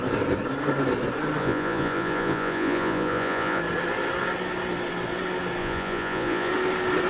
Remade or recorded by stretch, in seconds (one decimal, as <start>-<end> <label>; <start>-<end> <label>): 0.0-1.4 recorded; 1.4-3.6 remade; 3.6-5.6 recorded; 5.6-6.5 remade; 6.5-7.1 recorded